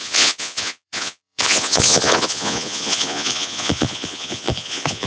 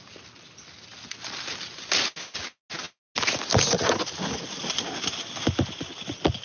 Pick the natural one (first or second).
second